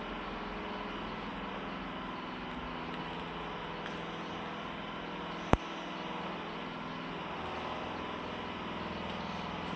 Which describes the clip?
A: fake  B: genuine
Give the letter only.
B